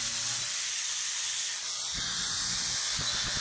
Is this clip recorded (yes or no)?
yes